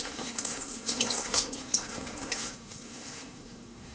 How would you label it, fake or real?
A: fake